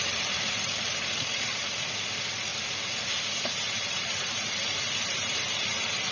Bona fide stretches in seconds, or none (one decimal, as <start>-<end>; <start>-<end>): 2.5-3.9